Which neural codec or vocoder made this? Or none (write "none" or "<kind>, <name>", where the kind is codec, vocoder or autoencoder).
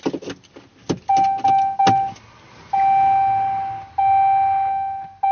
none